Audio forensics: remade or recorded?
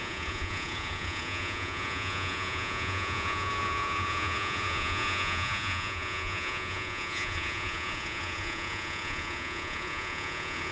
remade